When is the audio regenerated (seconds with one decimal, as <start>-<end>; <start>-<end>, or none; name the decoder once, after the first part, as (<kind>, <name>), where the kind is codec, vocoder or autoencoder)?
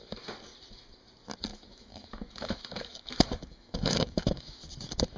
1.5-4.6 (autoencoder, DAC-VAE)